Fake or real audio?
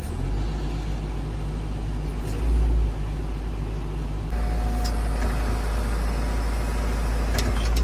real